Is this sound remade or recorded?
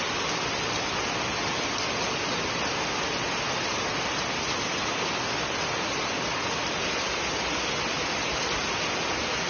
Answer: recorded